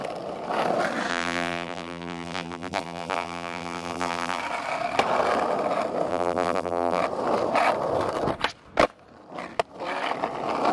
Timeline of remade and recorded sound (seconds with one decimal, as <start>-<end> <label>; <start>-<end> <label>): 0.0-1.1 recorded; 1.1-4.4 remade; 4.4-6.1 recorded; 6.1-7.0 remade; 7.0-10.7 recorded